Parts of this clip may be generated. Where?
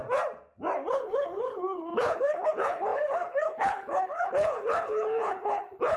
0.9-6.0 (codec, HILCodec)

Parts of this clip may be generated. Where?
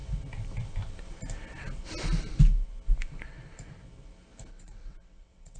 4.5-5.6 (vocoder, WaveNeXt)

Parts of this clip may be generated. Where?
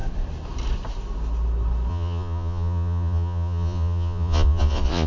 1.9-5.1 (vocoder, Vocos)